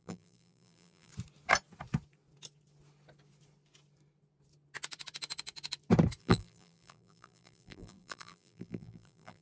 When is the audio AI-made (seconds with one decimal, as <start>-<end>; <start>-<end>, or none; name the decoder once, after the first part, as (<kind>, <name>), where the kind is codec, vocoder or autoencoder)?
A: 0.0-1.1 (vocoder, BigVGAN v2); 6.2-9.4